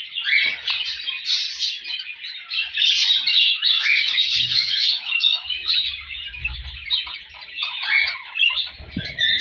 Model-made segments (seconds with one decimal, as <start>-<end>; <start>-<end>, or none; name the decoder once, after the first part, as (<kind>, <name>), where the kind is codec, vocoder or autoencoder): 3.3-5.7 (autoencoder, DAC-VAE)